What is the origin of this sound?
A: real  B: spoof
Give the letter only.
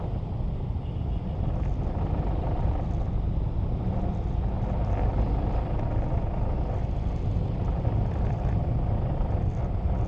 A